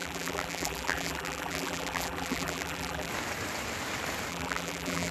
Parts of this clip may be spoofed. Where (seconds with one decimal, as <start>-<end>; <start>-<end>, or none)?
0.0-3.1; 4.3-5.1

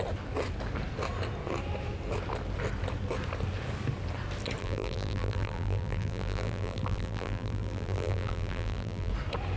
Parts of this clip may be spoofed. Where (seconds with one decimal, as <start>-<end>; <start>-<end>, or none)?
4.6-9.1

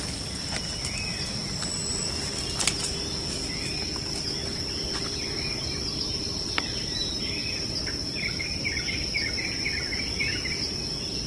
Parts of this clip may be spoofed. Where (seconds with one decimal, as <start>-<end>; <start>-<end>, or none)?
5.0-8.6